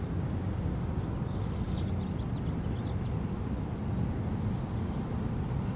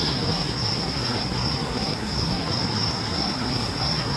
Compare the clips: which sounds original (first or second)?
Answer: first